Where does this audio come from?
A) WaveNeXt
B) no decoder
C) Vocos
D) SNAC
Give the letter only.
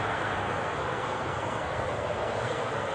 D